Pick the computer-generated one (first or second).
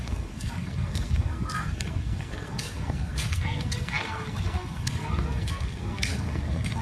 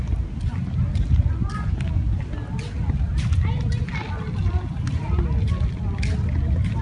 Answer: first